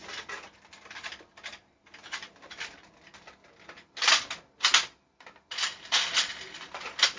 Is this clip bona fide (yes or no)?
yes